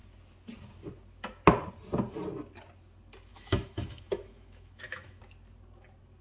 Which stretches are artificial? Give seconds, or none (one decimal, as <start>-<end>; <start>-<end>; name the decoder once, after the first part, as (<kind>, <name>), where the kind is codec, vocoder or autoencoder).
3.3-5.2 (autoencoder, DAC-VAE)